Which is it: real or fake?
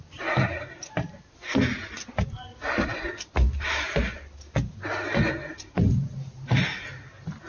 real